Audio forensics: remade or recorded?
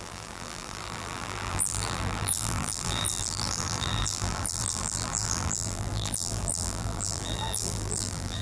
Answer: remade